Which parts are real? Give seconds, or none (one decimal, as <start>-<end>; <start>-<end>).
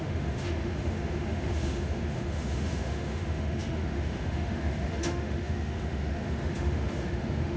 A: none